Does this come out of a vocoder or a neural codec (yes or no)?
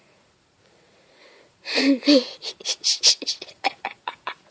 yes